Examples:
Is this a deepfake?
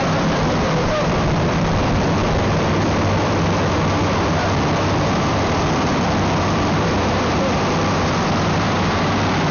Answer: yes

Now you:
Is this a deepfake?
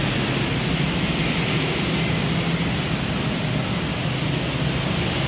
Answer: no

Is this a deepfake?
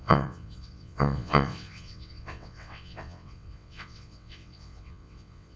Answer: yes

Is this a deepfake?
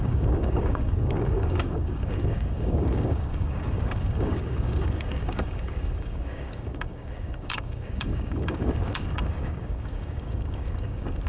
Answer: yes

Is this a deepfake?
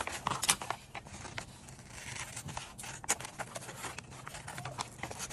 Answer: no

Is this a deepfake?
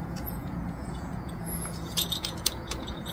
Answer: yes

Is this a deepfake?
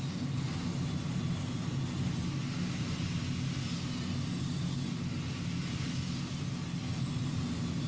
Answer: no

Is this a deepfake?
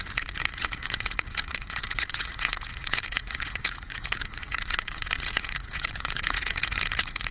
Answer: yes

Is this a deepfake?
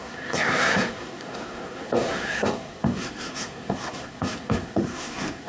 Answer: yes